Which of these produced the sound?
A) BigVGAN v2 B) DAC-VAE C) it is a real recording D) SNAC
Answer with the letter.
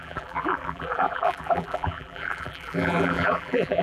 A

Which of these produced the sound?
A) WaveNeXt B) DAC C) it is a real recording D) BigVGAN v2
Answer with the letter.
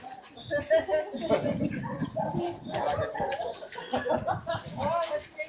C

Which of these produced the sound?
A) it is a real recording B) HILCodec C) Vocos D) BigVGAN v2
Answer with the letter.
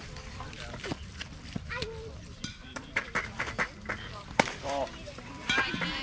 D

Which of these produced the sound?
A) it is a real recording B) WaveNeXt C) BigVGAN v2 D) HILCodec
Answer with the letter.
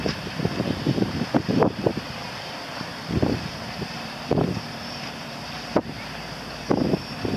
C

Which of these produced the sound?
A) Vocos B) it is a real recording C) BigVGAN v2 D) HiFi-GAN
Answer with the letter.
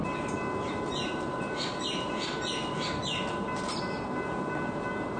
B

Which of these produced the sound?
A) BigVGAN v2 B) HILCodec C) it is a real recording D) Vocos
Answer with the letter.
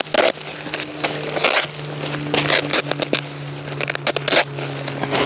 C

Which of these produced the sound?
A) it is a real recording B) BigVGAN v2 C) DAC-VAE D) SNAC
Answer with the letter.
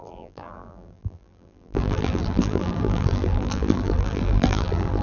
B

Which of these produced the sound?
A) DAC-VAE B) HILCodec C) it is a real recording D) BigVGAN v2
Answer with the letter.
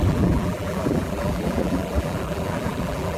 D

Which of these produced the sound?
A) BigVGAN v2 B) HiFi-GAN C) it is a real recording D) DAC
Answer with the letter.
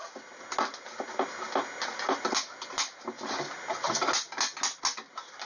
C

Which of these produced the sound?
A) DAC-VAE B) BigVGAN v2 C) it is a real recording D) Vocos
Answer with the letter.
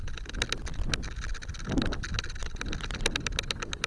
C